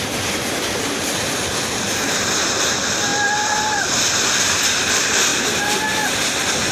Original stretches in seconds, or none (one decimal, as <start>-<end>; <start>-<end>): 0.0-3.1; 4.0-6.7